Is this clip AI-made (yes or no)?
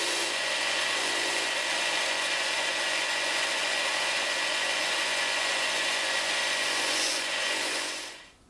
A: yes